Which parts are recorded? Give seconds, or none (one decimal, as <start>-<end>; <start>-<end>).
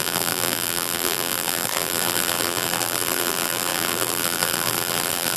none